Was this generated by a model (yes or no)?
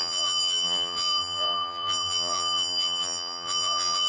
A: yes